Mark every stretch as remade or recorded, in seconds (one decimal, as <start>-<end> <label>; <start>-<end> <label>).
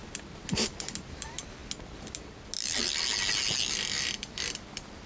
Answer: 0.0-5.1 recorded